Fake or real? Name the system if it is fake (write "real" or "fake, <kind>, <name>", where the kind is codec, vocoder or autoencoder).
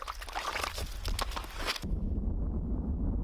real